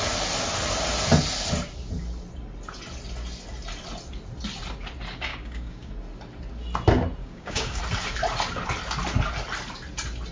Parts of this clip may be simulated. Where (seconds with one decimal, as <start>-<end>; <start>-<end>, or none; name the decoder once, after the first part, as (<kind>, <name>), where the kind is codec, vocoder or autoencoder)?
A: 5.3-5.9 (codec, DAC); 7.2-7.8